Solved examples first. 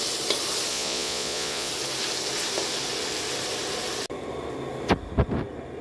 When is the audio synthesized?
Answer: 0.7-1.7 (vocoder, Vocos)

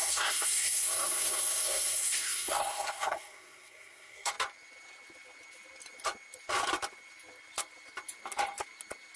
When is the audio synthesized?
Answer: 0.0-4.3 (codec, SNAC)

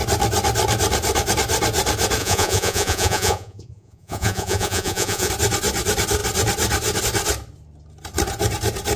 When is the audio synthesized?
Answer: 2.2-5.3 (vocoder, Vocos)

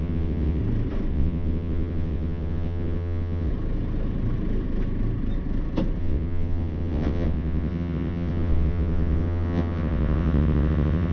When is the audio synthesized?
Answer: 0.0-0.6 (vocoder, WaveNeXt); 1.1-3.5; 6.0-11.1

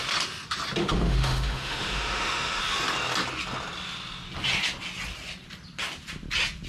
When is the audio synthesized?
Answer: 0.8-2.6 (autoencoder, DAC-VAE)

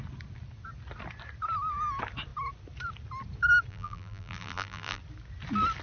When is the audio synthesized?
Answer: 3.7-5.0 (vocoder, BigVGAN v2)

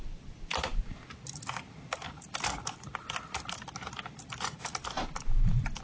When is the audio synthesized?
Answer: none

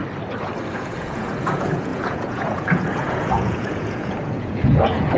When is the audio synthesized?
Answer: 0.7-5.2 (vocoder, Vocos)